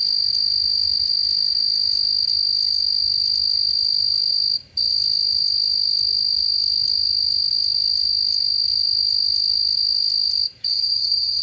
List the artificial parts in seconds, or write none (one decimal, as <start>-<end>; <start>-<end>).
10.7-11.4